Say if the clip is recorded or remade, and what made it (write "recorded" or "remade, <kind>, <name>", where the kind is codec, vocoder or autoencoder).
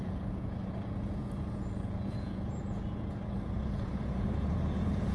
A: remade, vocoder, Vocos